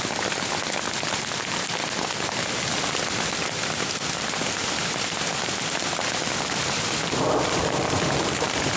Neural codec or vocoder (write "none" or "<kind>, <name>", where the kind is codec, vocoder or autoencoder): none